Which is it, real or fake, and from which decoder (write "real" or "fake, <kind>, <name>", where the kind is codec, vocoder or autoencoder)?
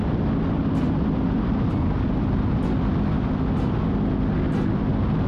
real